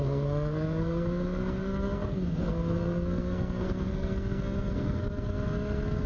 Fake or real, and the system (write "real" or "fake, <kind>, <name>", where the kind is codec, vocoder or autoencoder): fake, codec, SNAC